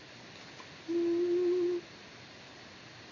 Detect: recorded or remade recorded